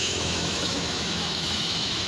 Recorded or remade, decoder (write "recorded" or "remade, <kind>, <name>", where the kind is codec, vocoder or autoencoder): remade, autoencoder, DAC-VAE